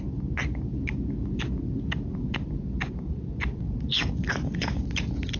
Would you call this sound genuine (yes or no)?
yes